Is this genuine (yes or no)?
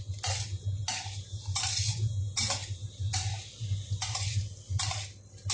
yes